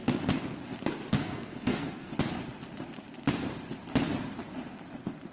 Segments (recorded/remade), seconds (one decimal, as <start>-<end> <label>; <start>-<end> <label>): 0.0-1.1 recorded; 1.1-2.1 remade; 2.1-5.3 recorded